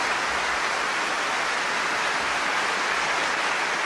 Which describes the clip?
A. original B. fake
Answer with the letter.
A